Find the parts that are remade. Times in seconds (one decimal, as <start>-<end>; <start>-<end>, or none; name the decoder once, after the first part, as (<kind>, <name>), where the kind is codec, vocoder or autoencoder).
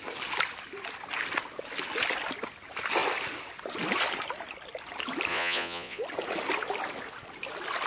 5.3-6.0 (vocoder, Vocos)